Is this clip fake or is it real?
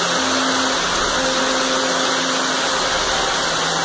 real